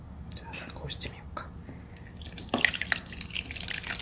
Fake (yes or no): no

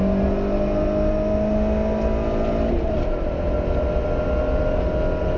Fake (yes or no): no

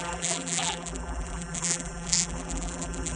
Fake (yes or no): yes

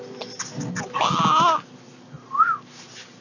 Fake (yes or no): no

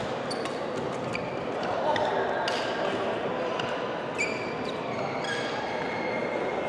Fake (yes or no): no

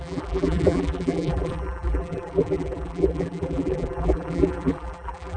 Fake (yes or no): yes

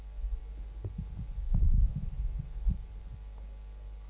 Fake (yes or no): no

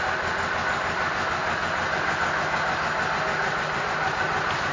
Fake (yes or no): no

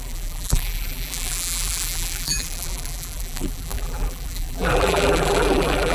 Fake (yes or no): yes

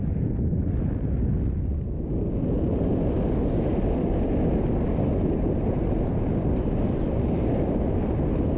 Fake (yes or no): no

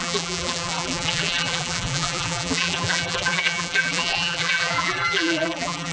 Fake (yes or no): yes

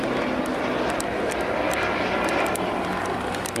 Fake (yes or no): no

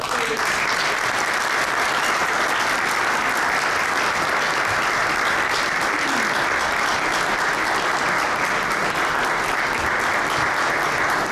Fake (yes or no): no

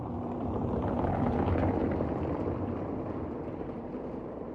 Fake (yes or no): yes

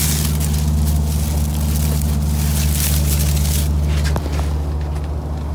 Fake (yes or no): no